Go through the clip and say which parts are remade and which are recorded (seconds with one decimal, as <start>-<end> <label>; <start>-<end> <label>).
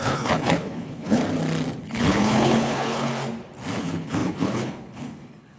0.0-1.2 remade; 1.2-1.8 recorded; 1.8-3.1 remade; 3.1-3.8 recorded; 3.8-5.6 remade